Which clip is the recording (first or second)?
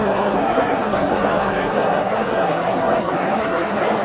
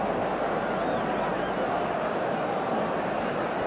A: second